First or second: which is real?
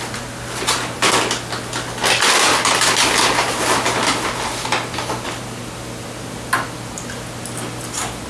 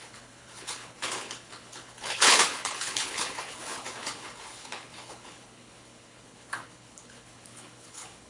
first